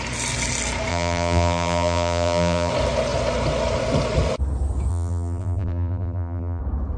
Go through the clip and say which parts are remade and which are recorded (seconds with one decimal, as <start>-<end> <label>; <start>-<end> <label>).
0.0-0.9 recorded; 0.9-2.7 remade; 2.7-4.9 recorded; 4.9-6.6 remade; 6.6-7.0 recorded